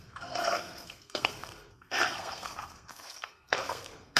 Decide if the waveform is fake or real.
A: fake